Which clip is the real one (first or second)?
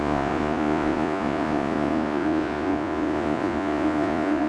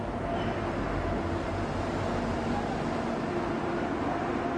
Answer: second